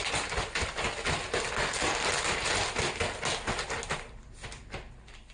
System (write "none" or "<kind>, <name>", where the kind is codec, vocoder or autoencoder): none